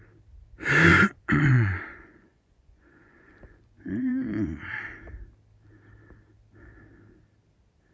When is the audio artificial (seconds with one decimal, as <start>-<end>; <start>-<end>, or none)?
0.9-4.7